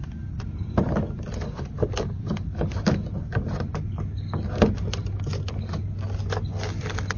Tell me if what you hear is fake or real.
real